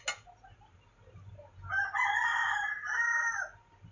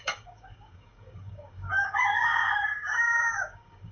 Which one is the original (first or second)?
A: first